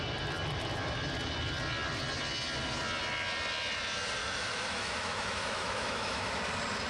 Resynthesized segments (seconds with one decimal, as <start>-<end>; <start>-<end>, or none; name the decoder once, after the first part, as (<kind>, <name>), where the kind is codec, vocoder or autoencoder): 4.2-6.4 (autoencoder, DAC-VAE)